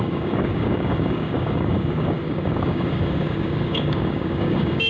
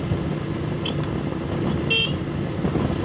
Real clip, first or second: second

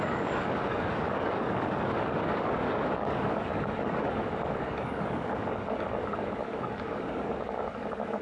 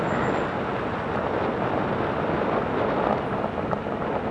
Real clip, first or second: second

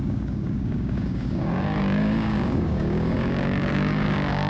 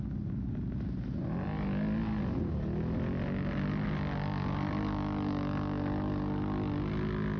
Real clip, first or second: second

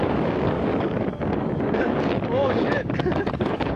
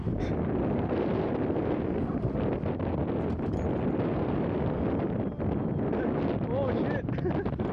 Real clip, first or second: second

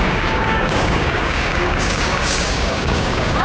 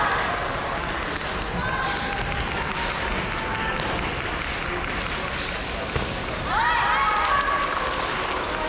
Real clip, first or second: second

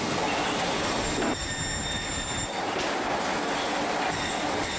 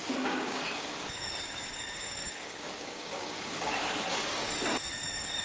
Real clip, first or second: first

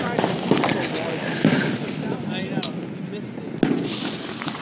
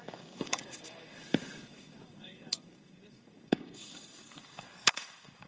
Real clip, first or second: first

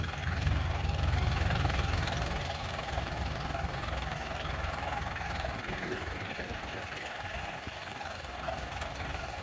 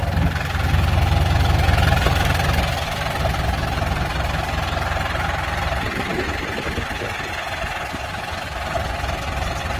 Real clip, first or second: second